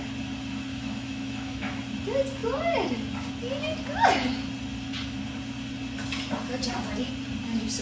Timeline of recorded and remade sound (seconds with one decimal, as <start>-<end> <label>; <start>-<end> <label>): 0.0-0.7 recorded; 0.7-1.8 remade; 1.8-7.8 recorded